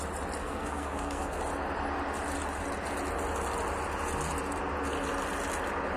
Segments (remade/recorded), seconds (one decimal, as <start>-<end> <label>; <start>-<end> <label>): 0.0-0.4 recorded; 0.4-1.4 remade; 1.4-6.0 recorded